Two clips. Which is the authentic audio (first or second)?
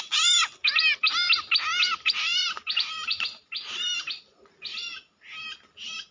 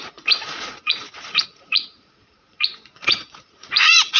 first